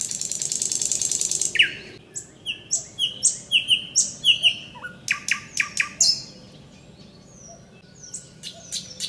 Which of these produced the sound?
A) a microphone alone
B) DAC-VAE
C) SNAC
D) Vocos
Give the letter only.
A